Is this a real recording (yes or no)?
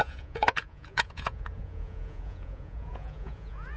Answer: no